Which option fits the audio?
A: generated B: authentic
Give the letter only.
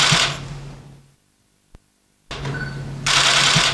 B